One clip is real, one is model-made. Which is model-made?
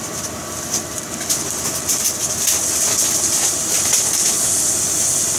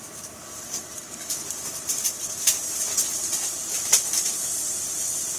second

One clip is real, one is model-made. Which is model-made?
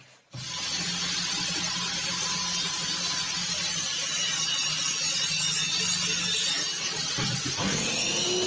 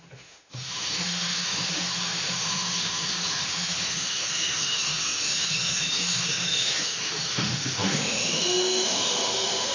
second